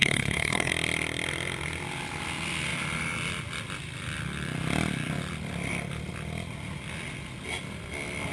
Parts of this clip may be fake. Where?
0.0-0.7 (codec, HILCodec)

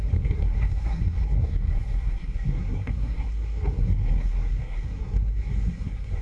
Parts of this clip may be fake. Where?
0.0-6.2 (codec, SNAC)

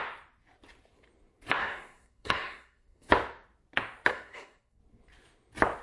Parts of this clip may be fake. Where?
1.6-3.1 (codec, SNAC); 4.1-4.8

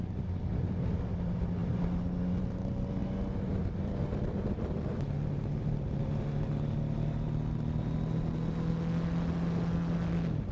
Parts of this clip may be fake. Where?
none